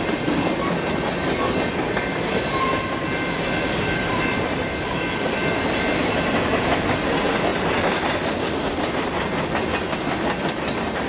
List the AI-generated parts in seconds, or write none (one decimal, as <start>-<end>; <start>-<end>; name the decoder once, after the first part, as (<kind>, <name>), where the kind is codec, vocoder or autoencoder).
none